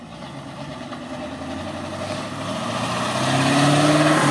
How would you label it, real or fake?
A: real